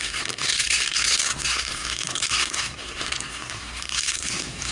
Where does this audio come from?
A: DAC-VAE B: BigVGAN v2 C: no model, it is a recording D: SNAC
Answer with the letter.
D